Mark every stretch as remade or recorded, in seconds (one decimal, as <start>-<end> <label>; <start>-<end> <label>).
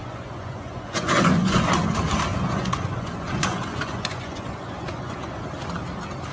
0.0-1.6 remade; 1.6-2.3 recorded; 2.3-5.4 remade; 5.4-6.3 recorded